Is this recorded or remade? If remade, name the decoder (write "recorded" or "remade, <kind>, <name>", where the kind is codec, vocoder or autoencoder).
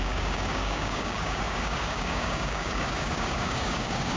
remade, codec, DAC